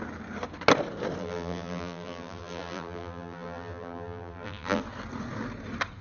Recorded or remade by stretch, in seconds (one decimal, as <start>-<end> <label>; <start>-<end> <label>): 0.0-1.2 recorded; 1.2-4.8 remade; 4.8-6.0 recorded